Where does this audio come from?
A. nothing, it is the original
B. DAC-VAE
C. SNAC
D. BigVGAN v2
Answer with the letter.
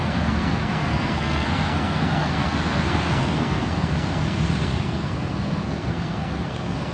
C